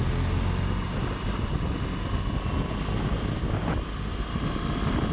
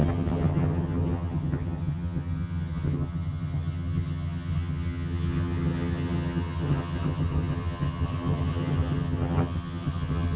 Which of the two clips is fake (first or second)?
second